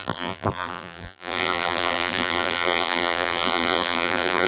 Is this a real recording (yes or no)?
no